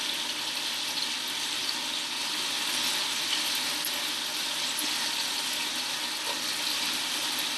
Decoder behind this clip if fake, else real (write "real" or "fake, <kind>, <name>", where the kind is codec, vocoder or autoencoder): real